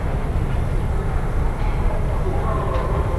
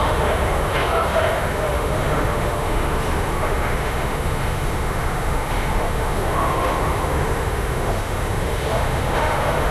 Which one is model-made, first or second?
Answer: second